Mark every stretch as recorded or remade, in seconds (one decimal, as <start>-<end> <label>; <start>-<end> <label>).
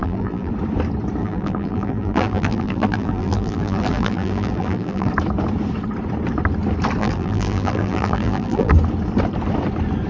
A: 0.0-0.5 remade; 0.5-1.2 recorded; 1.2-5.1 remade; 5.1-7.0 recorded; 7.0-8.7 remade; 8.7-10.1 recorded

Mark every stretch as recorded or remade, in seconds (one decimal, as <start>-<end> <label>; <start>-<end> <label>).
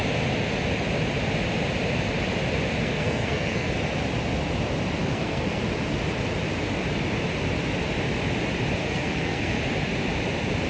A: 0.0-2.8 recorded; 2.8-3.7 remade; 3.7-5.0 recorded; 5.0-5.6 remade; 5.6-8.8 recorded; 8.8-9.6 remade; 9.6-10.7 recorded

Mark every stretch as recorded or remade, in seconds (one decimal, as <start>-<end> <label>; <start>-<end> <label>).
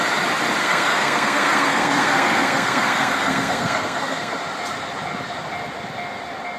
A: 0.0-0.6 recorded; 0.6-4.3 remade; 4.3-6.6 recorded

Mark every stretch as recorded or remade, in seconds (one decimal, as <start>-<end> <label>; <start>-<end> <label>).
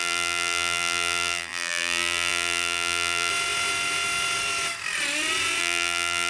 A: 0.0-3.3 remade; 3.3-5.6 recorded; 5.6-6.3 remade